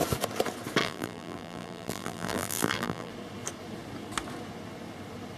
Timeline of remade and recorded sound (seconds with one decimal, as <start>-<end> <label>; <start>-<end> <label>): 0.0-0.8 recorded; 0.8-3.1 remade; 3.1-5.4 recorded